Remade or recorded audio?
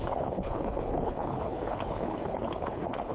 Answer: remade